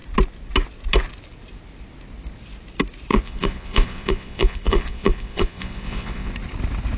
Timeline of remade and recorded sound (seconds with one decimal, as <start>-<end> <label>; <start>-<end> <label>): 0.0-3.1 recorded; 3.1-6.3 remade; 6.3-7.0 recorded